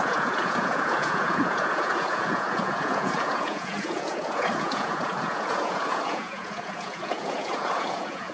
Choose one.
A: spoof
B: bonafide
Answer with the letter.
A